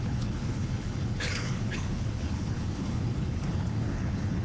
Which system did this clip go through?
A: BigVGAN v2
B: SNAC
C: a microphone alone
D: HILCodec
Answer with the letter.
D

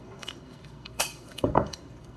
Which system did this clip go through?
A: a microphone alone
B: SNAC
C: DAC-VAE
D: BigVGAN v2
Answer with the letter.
B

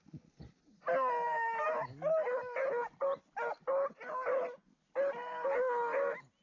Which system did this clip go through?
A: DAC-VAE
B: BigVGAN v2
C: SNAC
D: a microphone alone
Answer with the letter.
D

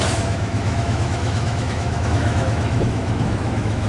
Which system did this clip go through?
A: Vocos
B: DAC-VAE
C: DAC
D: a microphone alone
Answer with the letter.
B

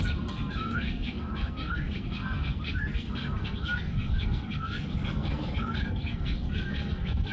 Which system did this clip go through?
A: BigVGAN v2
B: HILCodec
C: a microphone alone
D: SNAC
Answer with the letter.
D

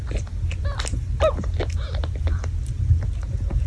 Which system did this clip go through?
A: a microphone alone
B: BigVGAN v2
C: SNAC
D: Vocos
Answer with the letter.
A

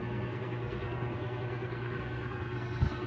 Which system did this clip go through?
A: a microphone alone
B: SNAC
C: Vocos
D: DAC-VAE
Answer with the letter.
B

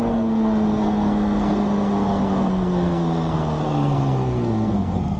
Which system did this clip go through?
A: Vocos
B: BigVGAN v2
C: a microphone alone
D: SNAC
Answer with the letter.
D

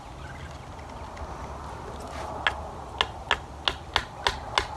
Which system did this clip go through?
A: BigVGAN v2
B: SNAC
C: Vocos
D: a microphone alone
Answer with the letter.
D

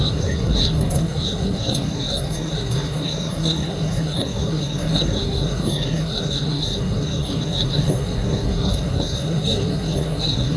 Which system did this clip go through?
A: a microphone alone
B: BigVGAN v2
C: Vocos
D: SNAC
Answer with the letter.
D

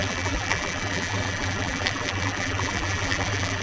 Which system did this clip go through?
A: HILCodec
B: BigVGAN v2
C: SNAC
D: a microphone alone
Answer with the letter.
B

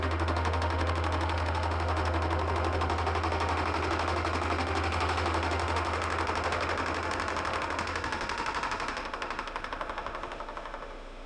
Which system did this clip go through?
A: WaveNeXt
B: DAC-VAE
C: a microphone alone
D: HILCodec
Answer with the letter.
B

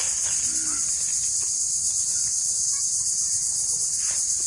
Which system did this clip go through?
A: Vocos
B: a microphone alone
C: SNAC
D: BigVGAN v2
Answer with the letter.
B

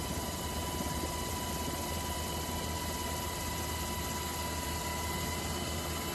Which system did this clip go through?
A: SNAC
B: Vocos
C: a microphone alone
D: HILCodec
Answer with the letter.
C